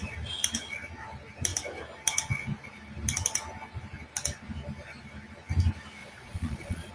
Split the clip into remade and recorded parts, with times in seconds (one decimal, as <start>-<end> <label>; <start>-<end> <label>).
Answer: 0.0-6.0 recorded; 6.0-6.9 remade